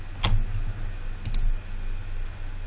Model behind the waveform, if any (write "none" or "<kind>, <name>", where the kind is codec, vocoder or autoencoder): none